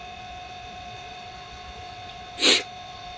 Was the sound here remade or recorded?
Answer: remade